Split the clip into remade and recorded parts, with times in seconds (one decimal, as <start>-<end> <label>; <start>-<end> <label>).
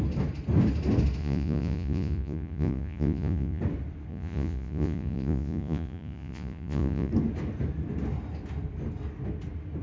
0.0-1.2 recorded; 1.2-3.6 remade; 3.6-4.1 recorded; 4.1-7.1 remade; 7.1-9.8 recorded